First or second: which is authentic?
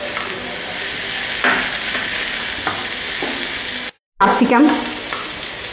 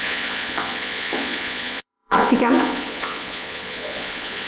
first